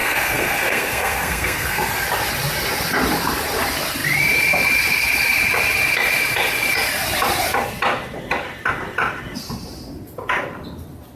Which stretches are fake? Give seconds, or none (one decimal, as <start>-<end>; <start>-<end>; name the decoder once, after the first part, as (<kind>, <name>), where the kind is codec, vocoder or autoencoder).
0.0-1.9 (codec, SNAC)